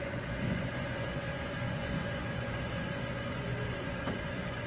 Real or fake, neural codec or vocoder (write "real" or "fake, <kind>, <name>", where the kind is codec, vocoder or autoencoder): fake, vocoder, Vocos